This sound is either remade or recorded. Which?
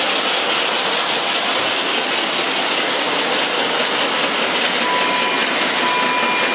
recorded